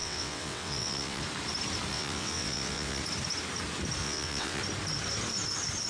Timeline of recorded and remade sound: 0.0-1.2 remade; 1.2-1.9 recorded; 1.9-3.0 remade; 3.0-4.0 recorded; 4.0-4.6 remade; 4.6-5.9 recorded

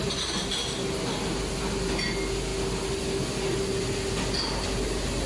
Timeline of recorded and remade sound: 0.0-5.3 recorded

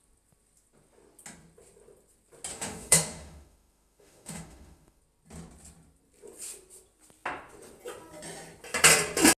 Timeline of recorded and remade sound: 0.0-2.5 recorded; 2.5-5.0 remade; 5.0-9.4 recorded

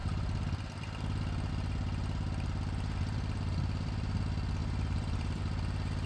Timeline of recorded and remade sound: 0.0-4.6 recorded; 4.6-5.4 remade; 5.4-6.1 recorded

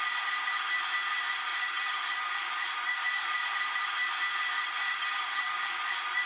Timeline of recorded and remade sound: 0.0-1.5 recorded; 1.5-2.0 remade; 2.0-4.6 recorded; 4.6-5.5 remade; 5.5-6.3 recorded